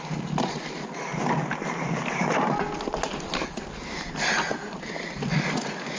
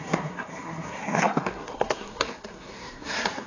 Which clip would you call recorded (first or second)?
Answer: first